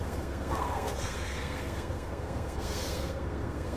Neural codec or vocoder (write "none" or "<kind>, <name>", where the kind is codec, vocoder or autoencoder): codec, SNAC